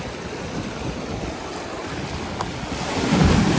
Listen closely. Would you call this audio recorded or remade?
recorded